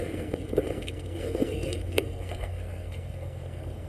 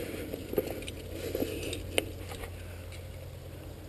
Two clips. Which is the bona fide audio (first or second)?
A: second